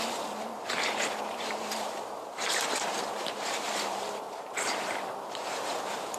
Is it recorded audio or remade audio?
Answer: remade